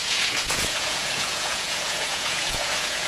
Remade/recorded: remade